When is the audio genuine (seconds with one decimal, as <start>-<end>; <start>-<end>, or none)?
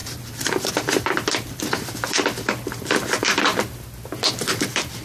3.5-4.3